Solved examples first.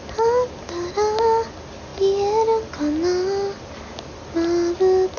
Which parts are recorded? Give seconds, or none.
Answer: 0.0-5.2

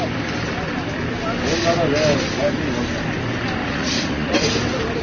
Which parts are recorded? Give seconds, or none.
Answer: 0.0-3.6; 4.3-5.0

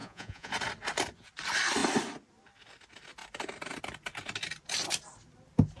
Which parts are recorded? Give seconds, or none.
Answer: 0.5-5.8